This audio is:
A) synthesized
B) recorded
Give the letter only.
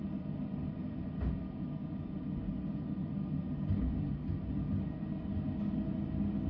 B